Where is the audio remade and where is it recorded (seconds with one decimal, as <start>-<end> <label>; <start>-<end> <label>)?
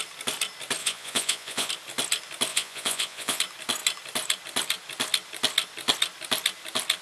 0.0-0.8 recorded; 0.8-1.7 remade; 1.7-2.5 recorded; 2.5-3.4 remade; 3.4-7.0 recorded